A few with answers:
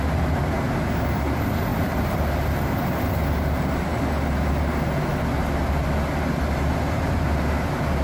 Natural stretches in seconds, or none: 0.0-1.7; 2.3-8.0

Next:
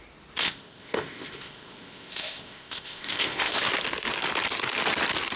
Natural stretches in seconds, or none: 0.0-0.4; 3.6-5.4

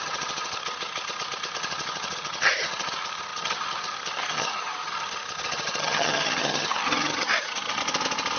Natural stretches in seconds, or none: 7.8-8.4

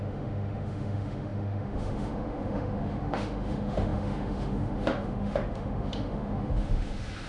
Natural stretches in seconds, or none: none

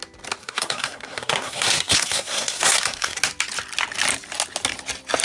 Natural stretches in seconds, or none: 0.0-0.4; 3.2-5.2

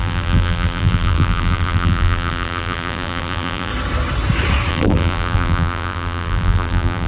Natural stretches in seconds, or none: 3.7-4.7

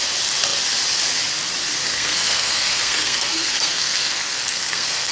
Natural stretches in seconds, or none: 0.0-1.9